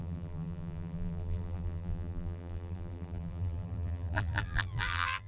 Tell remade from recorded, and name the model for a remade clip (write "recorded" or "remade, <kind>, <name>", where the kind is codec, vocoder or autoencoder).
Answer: remade, vocoder, BigVGAN v2